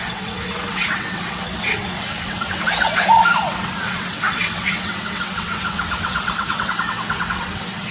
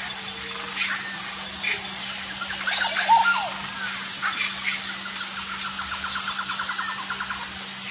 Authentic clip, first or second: second